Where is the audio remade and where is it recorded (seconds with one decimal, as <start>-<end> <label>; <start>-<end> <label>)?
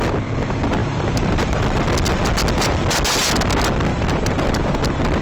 0.0-0.8 recorded; 0.8-1.6 remade; 1.6-3.9 recorded; 3.9-4.8 remade; 4.8-5.2 recorded